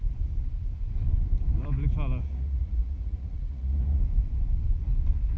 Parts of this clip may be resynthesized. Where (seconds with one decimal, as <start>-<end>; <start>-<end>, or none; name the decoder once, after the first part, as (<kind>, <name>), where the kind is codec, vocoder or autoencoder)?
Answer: 2.2-4.0 (vocoder, Vocos)